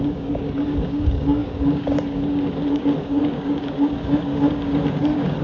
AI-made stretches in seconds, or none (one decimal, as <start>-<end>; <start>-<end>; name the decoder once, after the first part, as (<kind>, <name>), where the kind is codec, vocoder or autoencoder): 0.0-5.4 (codec, DAC)

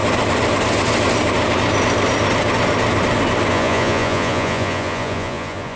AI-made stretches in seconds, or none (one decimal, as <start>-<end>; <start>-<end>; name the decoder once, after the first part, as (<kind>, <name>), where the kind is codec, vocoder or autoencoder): 3.5-5.8 (vocoder, Vocos)

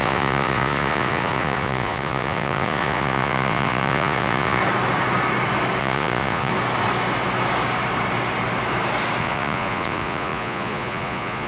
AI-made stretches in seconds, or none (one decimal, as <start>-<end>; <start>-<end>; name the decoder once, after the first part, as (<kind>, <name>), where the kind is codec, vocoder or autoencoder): 0.0-4.6 (vocoder, Vocos); 5.8-6.5; 9.2-11.5

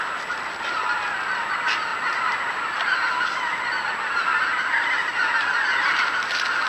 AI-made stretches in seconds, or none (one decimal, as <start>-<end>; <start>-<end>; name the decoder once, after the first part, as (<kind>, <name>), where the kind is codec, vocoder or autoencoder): none

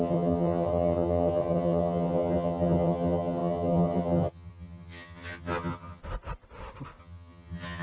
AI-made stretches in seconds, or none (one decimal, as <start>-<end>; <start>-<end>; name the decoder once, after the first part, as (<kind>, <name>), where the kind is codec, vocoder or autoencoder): 0.0-6.0 (vocoder, HiFi-GAN); 7.0-7.8

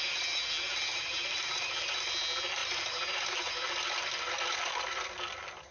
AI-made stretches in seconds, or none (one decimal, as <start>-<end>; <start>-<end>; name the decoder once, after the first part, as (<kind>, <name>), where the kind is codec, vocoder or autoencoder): 0.9-1.8 (vocoder, BigVGAN v2)

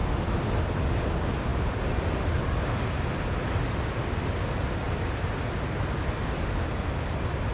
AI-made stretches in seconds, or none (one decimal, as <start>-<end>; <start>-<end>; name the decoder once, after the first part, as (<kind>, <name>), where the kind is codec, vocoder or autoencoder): none